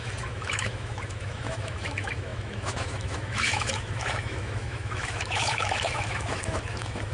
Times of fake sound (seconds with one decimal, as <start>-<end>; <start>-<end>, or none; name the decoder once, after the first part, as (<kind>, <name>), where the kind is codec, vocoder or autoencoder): 0.0-7.1 (autoencoder, DAC-VAE)